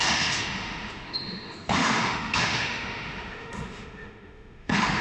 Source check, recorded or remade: remade